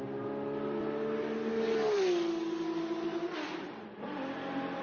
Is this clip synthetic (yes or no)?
no